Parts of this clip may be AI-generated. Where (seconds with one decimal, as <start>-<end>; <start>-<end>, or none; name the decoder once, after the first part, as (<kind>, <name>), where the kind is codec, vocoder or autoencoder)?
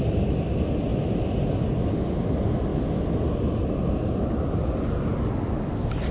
none